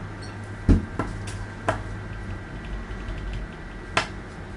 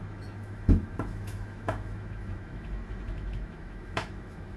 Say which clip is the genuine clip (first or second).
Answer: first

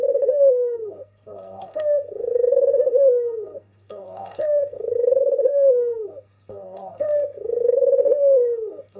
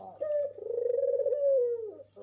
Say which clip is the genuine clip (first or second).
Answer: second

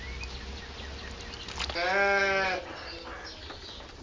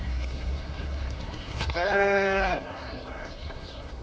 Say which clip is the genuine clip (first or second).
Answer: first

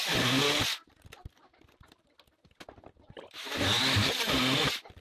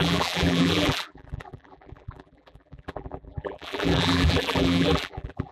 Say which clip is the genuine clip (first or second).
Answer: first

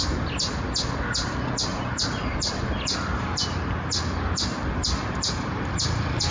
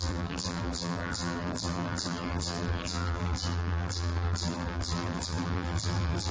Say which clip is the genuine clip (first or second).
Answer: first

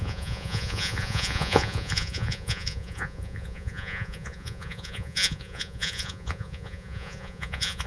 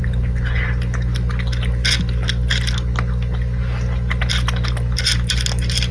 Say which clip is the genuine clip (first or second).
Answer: second